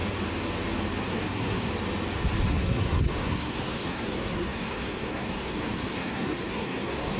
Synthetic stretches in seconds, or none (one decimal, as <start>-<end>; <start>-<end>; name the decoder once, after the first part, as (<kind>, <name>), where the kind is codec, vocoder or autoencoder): 1.0-1.7 (codec, SNAC); 2.5-7.2